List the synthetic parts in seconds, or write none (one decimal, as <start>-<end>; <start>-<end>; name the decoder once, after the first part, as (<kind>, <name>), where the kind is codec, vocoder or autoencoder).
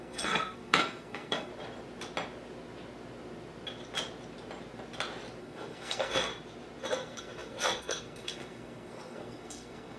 0.0-1.5 (codec, SNAC); 5.4-6.3; 6.9-10.0